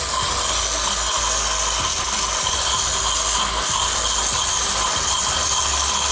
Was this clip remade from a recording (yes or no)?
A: no